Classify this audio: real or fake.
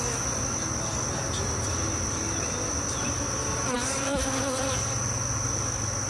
real